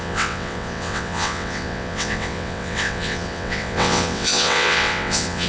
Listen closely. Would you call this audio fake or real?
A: fake